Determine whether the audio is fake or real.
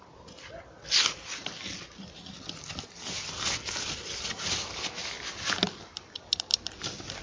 real